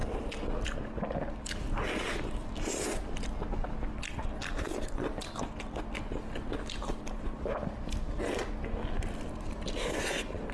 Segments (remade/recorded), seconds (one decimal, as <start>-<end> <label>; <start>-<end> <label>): 0.0-10.5 recorded